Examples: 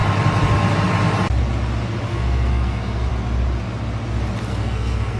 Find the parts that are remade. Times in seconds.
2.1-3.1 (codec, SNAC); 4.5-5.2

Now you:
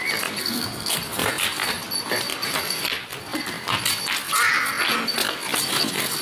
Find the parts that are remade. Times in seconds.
0.4-1.0 (codec, SNAC)

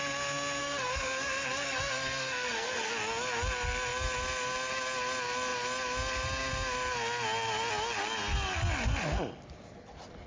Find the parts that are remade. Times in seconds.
0.6-2.9 (codec, SNAC)

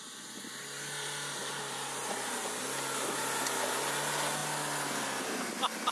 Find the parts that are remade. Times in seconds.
none

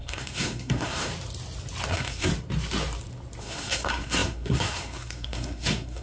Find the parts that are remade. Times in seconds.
0.0-1.1 (codec, SNAC); 1.9-2.3; 3.4-6.0